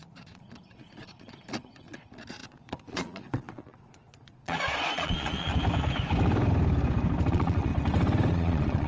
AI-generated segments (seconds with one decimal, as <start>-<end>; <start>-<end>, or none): 0.0-5.5; 7.3-7.7; 8.3-8.9